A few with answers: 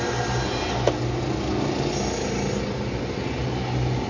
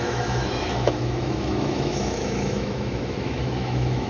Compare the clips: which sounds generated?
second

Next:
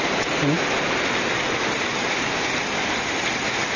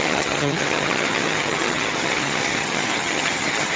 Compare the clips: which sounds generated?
second